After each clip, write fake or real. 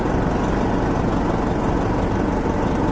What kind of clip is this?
real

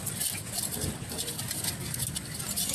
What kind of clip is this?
real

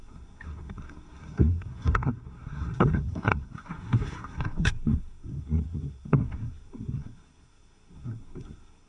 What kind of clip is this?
fake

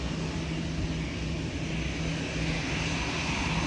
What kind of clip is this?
real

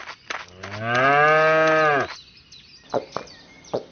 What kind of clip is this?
real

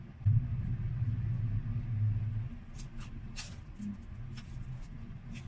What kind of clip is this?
real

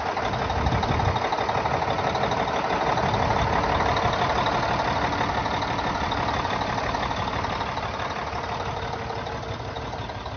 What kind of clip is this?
real